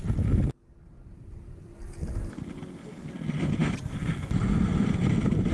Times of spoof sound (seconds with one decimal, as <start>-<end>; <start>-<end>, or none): none

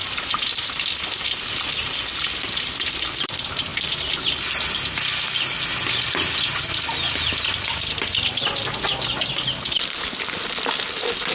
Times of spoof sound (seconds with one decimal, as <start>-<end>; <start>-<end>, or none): 0.0-3.7; 7.4-11.3